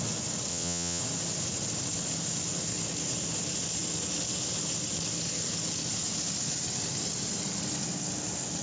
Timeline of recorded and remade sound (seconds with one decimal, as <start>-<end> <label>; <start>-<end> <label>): 0.0-0.5 recorded; 0.5-1.0 remade; 1.0-8.6 recorded